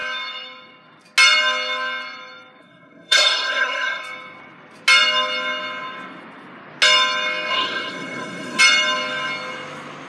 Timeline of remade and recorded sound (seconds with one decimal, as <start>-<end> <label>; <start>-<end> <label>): 0.0-2.6 recorded; 2.6-4.0 remade; 4.0-7.5 recorded; 7.5-8.6 remade; 8.6-10.1 recorded